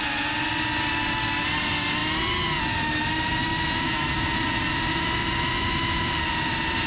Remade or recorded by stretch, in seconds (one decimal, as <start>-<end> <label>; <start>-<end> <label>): 0.0-3.5 recorded; 3.5-6.9 remade